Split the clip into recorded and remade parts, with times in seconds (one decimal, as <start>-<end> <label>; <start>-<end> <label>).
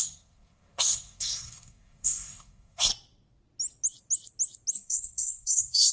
0.0-2.9 remade; 2.9-4.7 recorded; 4.7-5.9 remade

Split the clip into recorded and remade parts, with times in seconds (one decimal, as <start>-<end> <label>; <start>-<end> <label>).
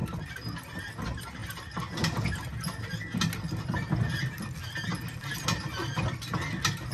0.0-6.9 recorded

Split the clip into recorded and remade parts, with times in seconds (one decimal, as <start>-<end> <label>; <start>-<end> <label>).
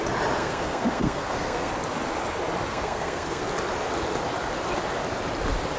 0.0-0.4 recorded; 0.4-1.7 remade; 1.7-2.7 recorded; 2.7-3.4 remade; 3.4-5.8 recorded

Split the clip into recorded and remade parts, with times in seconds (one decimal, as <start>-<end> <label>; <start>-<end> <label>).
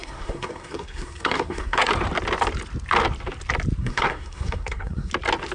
0.0-1.9 remade; 1.9-3.8 recorded; 3.8-5.1 remade; 5.1-5.5 recorded